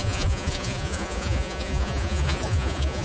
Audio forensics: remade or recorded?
remade